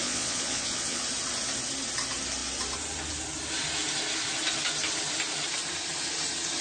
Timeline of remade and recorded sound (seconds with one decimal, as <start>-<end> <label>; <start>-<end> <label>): 0.0-1.0 remade; 1.0-6.6 recorded